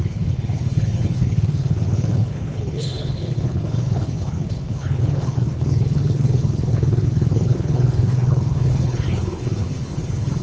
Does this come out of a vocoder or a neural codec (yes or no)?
yes